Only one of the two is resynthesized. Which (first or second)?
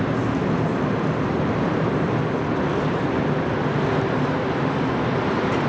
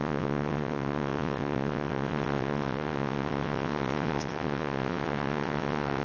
second